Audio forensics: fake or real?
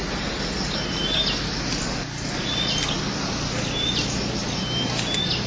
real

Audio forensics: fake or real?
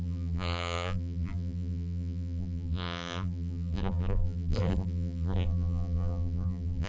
fake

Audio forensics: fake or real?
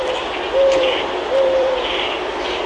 fake